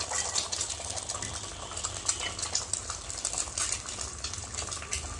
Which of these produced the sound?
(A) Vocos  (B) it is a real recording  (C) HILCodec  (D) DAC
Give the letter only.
B